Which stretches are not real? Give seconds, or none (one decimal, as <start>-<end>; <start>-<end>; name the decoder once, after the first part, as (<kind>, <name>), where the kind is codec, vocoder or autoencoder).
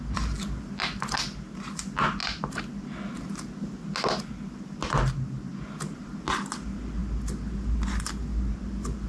none